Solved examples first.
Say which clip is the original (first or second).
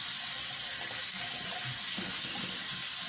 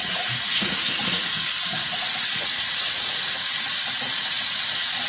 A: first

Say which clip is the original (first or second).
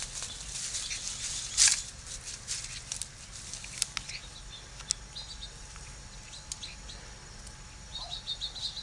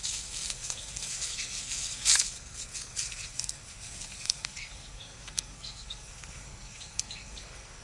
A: first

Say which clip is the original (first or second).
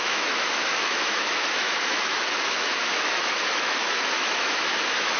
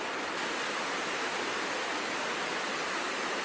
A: second